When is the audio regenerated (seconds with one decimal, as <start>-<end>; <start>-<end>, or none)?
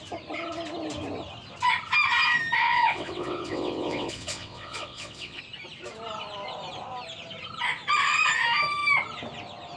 2.6-5.4